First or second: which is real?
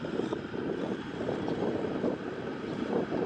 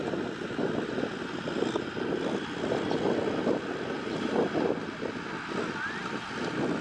second